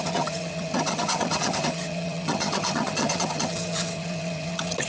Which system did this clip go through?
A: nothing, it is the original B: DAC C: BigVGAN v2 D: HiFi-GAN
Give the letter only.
D